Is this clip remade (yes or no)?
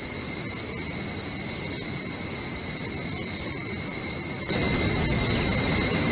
no